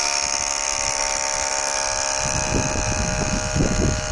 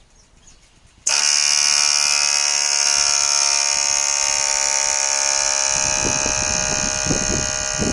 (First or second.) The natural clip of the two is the second